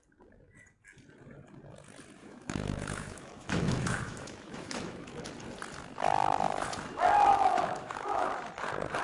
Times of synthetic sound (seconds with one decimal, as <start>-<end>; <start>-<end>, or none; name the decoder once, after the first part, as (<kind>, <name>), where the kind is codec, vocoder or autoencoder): 2.2-5.2 (autoencoder, DAC-VAE); 7.3-8.3